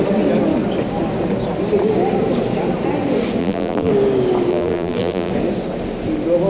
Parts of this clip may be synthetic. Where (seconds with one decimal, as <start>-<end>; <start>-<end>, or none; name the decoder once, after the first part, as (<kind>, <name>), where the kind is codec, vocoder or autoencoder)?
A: 3.4-3.9 (vocoder, BigVGAN v2); 4.5-5.3